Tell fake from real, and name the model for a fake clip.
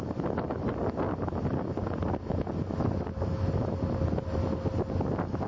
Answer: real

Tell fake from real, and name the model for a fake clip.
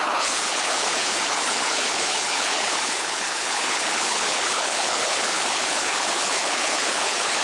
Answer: fake, codec, HILCodec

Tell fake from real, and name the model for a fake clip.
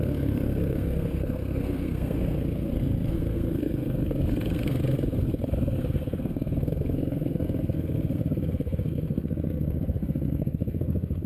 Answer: fake, codec, SNAC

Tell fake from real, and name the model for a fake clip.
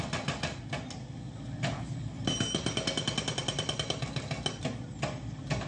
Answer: real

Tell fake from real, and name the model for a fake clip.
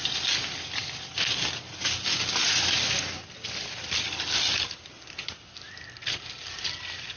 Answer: real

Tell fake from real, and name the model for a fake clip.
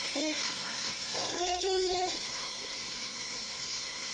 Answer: fake, codec, SNAC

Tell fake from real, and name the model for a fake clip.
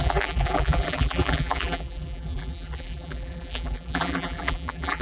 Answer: fake, vocoder, BigVGAN v2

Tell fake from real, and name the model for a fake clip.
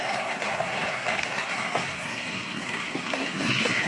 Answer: fake, codec, SNAC